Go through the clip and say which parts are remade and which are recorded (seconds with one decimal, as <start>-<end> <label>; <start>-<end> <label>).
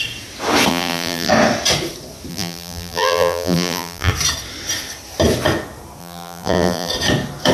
0.0-0.7 recorded; 0.7-1.3 remade; 1.3-2.3 recorded; 2.3-4.1 remade; 4.1-6.0 recorded; 6.0-6.9 remade; 6.9-7.5 recorded